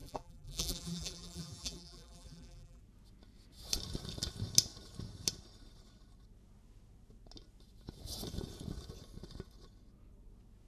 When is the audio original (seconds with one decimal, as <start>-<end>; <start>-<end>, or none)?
2.8-10.7